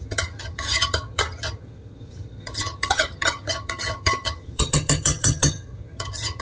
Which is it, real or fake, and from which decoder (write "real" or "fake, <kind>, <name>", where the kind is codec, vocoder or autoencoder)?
fake, vocoder, HiFi-GAN